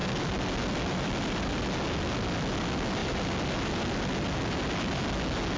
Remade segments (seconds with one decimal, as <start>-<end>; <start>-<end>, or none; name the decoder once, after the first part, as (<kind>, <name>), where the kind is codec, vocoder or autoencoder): none